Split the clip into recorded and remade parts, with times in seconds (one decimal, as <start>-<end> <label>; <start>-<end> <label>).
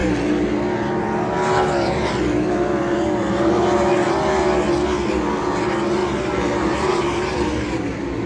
0.0-6.0 recorded; 6.0-8.3 remade